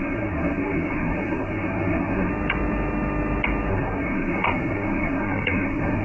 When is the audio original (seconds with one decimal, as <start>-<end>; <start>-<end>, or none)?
2.3-3.7